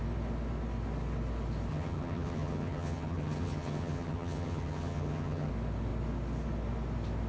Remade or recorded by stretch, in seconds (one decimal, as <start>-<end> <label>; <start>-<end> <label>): 0.0-1.7 recorded; 1.7-5.5 remade; 5.5-7.3 recorded